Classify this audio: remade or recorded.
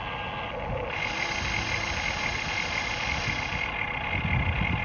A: recorded